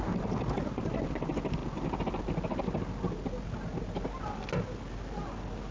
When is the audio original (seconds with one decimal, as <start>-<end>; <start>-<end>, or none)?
0.0-5.7